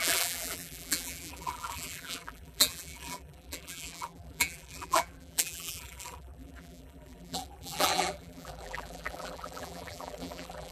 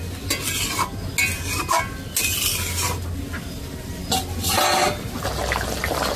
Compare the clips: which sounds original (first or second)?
second